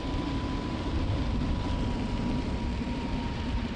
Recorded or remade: recorded